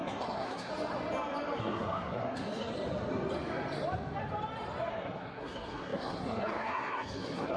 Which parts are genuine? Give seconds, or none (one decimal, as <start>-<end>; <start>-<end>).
0.7-1.6; 2.7-4.9